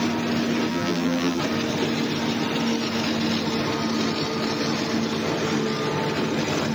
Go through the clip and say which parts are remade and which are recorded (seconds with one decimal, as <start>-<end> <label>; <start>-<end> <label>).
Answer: 0.0-0.7 recorded; 0.7-1.4 remade; 1.4-6.7 recorded

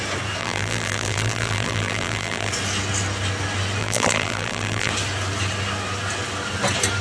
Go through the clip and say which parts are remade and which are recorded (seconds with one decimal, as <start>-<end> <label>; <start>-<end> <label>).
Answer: 0.0-0.4 recorded; 0.4-2.5 remade; 2.5-3.8 recorded; 3.8-4.9 remade; 4.9-7.0 recorded

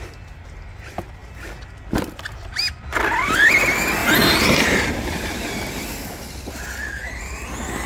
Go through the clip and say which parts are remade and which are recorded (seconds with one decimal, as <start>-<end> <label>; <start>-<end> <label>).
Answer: 0.0-4.0 recorded; 4.0-5.6 remade; 5.6-7.9 recorded

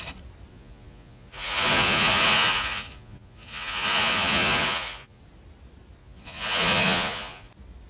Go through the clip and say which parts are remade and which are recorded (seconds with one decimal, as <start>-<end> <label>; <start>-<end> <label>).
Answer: 0.0-0.5 recorded; 0.5-5.2 remade; 5.2-6.0 recorded; 6.0-7.5 remade; 7.5-7.9 recorded

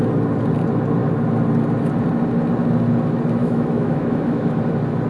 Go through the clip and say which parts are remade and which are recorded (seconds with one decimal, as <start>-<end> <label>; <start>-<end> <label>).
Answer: 0.0-3.4 recorded; 3.4-4.6 remade; 4.6-5.1 recorded

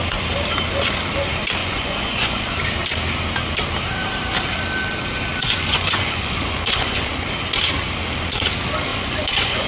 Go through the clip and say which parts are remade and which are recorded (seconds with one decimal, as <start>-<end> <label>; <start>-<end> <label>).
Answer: 0.0-1.6 recorded; 1.6-2.5 remade; 2.5-5.4 recorded; 5.4-7.1 remade; 7.1-8.9 recorded; 8.9-9.7 remade

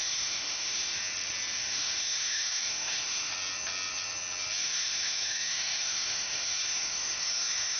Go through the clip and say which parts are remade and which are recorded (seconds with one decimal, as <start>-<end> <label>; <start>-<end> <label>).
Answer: 0.0-1.0 remade; 1.0-1.6 recorded; 1.6-3.3 remade; 3.3-4.6 recorded; 4.6-7.8 remade

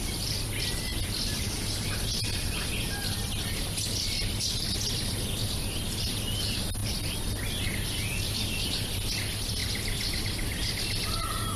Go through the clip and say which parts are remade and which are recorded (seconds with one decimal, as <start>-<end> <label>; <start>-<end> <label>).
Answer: 0.0-11.6 recorded